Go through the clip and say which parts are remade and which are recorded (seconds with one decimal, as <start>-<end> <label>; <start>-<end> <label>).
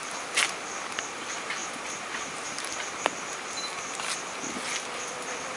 0.0-1.6 recorded; 1.6-2.5 remade; 2.5-5.6 recorded